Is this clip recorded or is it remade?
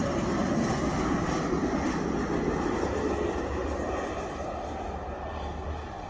recorded